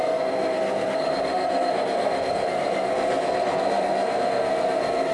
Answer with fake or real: fake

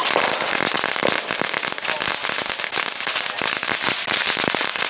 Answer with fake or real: real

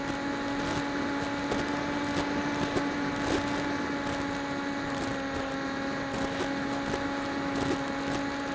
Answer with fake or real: real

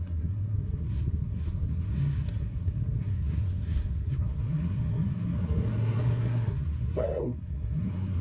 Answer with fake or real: fake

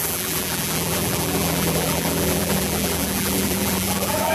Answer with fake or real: fake